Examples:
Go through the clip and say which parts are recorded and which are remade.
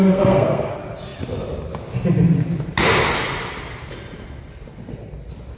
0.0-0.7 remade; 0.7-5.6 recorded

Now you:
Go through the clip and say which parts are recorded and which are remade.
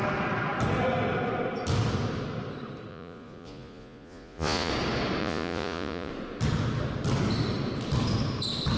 0.0-2.9 recorded; 2.9-4.7 remade; 4.7-5.2 recorded; 5.2-6.1 remade; 6.1-8.8 recorded